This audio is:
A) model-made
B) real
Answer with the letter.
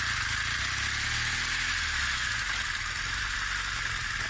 B